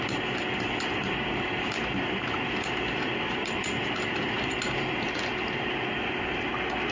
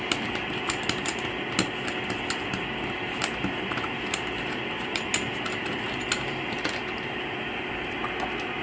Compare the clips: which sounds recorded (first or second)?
second